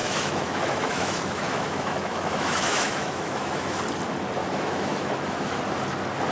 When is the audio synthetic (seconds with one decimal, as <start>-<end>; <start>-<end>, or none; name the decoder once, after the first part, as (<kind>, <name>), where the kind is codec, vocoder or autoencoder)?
0.0-3.8 (autoencoder, DAC-VAE); 4.4-5.6